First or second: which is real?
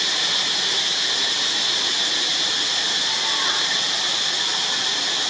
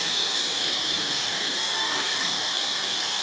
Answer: first